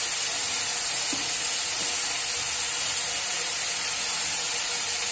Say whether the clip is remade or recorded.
recorded